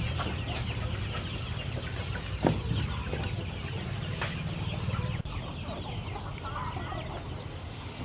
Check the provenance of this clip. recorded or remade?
recorded